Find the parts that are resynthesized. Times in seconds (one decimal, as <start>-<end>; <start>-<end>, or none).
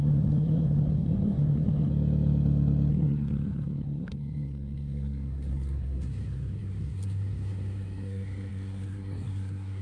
0.0-1.9; 2.9-9.8